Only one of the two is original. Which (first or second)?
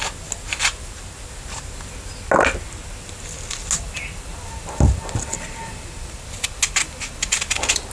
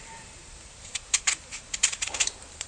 first